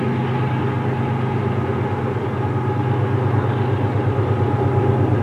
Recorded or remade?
recorded